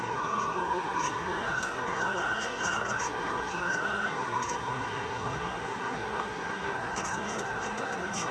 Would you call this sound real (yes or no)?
no